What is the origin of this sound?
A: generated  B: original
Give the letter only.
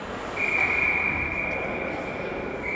A